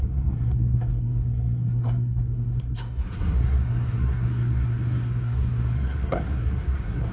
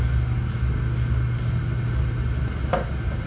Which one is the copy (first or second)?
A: first